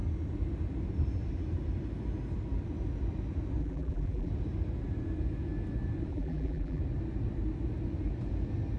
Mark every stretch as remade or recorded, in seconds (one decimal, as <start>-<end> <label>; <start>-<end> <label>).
0.0-3.6 recorded; 3.6-4.3 remade; 4.3-6.1 recorded; 6.1-6.8 remade; 6.8-8.8 recorded